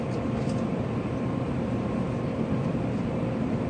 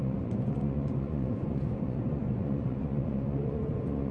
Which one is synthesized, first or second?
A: second